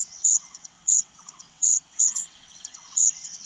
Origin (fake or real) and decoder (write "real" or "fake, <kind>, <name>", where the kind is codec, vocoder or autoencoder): fake, vocoder, WaveNeXt